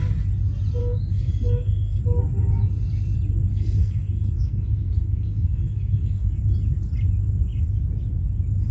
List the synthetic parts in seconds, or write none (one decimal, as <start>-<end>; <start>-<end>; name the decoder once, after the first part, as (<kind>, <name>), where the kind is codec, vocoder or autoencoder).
0.8-2.0 (codec, SNAC); 3.5-6.4